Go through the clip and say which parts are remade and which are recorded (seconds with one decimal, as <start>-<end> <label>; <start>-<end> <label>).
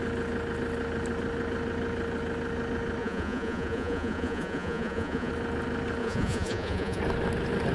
0.0-3.0 recorded; 3.0-5.3 remade; 5.3-6.0 recorded; 6.0-7.0 remade; 7.0-7.7 recorded